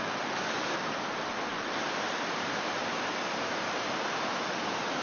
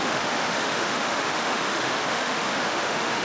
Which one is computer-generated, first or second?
second